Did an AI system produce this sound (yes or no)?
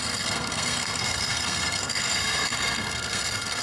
yes